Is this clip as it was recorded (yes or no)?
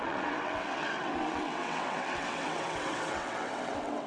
no